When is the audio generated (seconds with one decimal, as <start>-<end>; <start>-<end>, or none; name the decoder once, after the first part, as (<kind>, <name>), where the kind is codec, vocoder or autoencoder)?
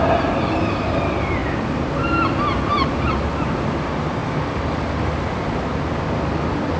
1.4-1.9 (vocoder, BigVGAN v2); 2.7-3.5